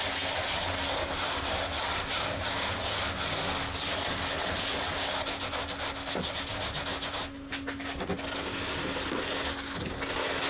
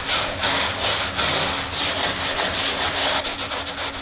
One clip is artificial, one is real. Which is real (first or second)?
first